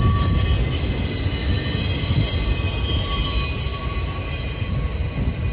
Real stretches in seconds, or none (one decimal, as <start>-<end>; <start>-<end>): 0.0-5.5